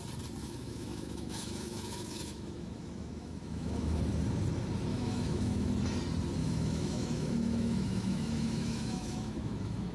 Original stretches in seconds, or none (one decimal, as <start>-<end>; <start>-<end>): 0.0-0.4; 4.0-4.9; 5.7-6.4